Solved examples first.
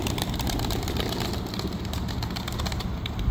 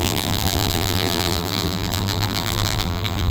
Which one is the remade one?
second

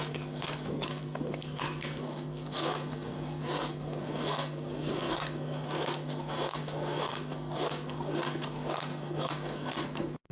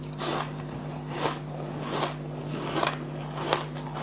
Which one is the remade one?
first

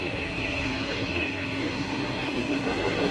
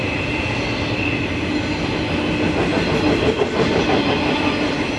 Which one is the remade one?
first